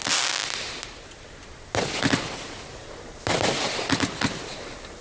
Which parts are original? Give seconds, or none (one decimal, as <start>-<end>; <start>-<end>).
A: 0.0-5.0